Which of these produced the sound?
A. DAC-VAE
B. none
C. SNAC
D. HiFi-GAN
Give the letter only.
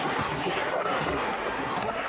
C